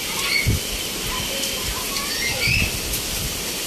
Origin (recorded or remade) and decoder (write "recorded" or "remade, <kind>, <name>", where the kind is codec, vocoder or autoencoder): recorded